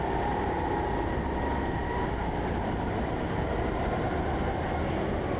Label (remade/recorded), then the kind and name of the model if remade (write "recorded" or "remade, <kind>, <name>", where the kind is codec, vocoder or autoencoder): recorded